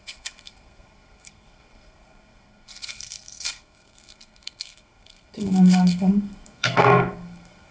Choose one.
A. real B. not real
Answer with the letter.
B